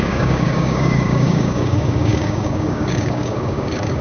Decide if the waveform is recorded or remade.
remade